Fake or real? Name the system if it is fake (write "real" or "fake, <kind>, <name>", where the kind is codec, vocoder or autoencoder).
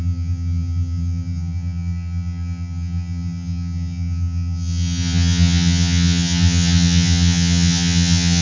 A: fake, vocoder, HiFi-GAN